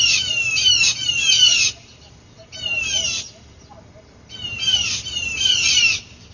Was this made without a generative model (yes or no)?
no